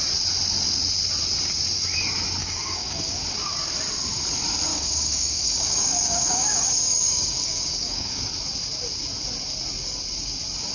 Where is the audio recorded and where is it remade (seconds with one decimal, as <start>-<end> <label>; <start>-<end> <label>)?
0.0-2.4 recorded; 2.4-3.2 remade; 3.2-4.7 recorded; 4.7-8.2 remade; 8.2-10.7 recorded